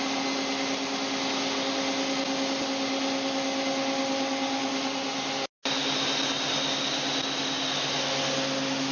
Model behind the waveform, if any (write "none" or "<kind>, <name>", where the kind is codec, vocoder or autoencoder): none